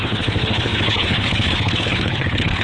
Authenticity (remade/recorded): remade